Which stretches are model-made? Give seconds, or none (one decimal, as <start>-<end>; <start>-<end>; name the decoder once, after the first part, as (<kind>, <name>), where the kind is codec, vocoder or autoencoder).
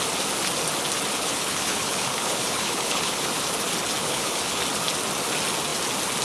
1.1-3.3 (codec, HILCodec); 4.0-4.6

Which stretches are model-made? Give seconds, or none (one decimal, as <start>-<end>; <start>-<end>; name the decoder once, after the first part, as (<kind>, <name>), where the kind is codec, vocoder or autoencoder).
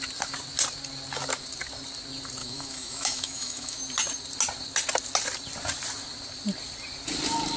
2.4-3.8 (autoencoder, DAC-VAE)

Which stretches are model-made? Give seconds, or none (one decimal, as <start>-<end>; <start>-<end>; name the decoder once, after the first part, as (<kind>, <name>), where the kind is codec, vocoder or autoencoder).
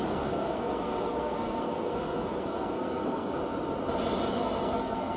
0.0-3.4 (codec, SNAC); 4.3-5.2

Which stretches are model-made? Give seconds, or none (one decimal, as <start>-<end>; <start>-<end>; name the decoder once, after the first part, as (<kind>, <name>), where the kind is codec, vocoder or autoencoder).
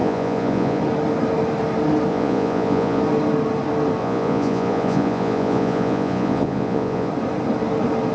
0.0-0.8 (vocoder, Vocos); 2.1-3.0; 4.0-7.1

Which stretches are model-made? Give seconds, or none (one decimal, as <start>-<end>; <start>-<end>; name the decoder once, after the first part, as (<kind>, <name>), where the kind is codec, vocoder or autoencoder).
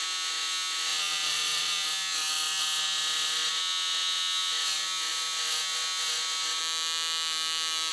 0.0-6.6 (vocoder, WaveNeXt)